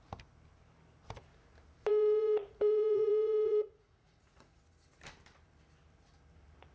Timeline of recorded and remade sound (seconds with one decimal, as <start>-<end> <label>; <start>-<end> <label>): 0.0-1.9 recorded; 1.9-4.6 remade; 4.6-6.7 recorded